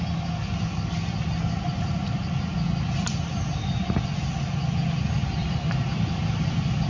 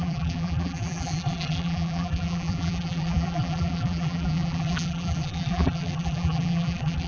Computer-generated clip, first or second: second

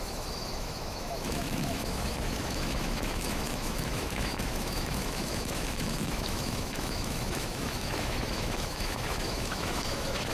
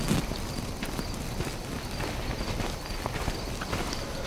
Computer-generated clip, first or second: first